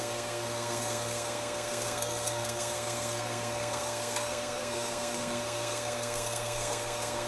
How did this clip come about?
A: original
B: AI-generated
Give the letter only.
B